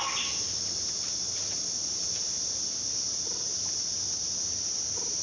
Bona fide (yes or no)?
yes